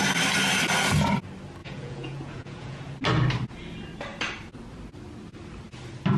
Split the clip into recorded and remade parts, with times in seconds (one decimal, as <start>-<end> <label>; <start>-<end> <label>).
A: 0.0-1.6 recorded; 1.6-2.8 remade; 2.8-6.2 recorded